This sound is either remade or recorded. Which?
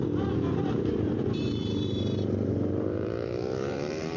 remade